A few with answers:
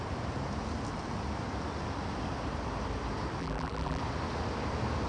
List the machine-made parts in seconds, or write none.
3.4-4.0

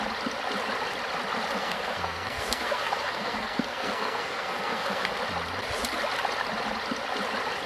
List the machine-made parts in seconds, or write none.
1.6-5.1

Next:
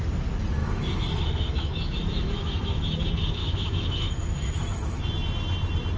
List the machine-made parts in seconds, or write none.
0.6-3.0; 3.4-5.0

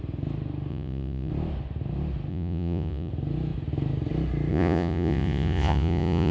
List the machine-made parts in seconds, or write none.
0.7-1.3; 2.3-3.1; 4.5-6.3

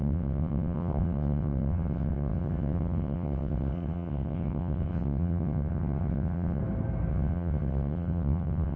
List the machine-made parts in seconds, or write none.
0.0-6.6; 7.1-8.8